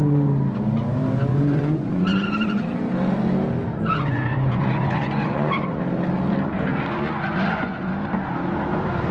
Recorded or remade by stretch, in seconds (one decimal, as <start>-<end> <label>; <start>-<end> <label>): 0.0-1.3 recorded; 1.3-2.6 remade; 2.6-3.7 recorded; 3.7-5.8 remade; 5.8-6.7 recorded; 6.7-7.9 remade; 7.9-9.1 recorded